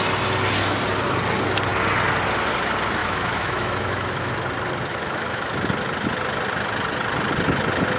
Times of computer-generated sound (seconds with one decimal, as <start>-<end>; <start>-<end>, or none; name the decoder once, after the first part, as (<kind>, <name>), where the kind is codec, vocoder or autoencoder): 3.0-4.3 (autoencoder, DAC-VAE); 4.9-5.5